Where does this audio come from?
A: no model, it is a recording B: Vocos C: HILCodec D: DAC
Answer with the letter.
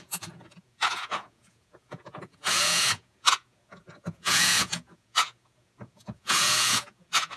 B